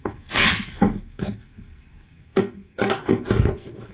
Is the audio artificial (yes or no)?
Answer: yes